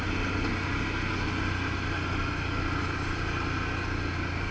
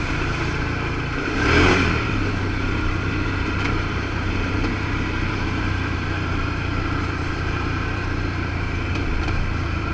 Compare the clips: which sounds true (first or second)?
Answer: first